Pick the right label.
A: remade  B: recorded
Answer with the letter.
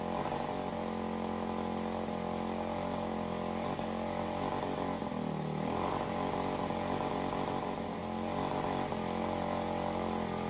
B